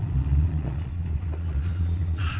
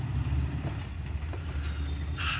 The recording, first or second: second